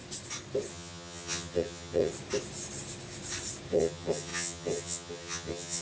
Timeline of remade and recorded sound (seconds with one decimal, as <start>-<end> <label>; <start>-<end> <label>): 0.0-0.7 recorded; 0.7-2.1 remade; 2.1-3.7 recorded; 3.7-5.8 remade